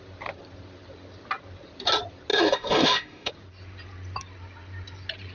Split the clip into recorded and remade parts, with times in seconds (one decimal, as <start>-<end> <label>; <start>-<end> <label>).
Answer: 0.0-2.3 recorded; 2.3-3.3 remade; 3.3-5.3 recorded